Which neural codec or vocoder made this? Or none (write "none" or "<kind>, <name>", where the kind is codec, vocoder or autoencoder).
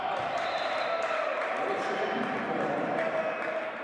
none